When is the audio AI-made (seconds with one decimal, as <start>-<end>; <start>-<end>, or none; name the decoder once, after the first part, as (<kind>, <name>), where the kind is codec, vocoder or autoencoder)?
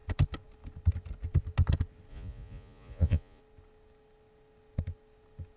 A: 2.1-3.4 (vocoder, Vocos)